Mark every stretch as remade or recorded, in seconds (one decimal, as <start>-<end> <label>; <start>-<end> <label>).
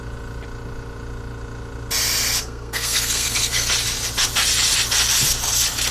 0.0-2.4 recorded; 2.4-3.7 remade; 3.7-5.9 recorded